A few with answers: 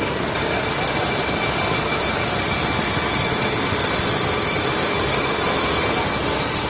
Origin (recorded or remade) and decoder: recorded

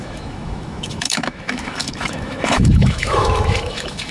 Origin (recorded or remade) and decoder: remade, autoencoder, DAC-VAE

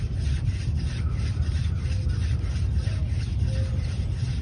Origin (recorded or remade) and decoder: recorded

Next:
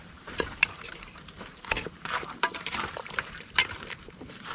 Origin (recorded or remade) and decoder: remade, vocoder, BigVGAN v2